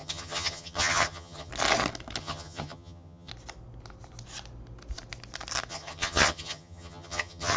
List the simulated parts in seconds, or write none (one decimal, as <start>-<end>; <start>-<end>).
0.0-1.5; 2.2-3.3; 5.7-7.6